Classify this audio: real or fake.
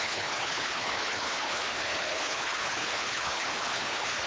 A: fake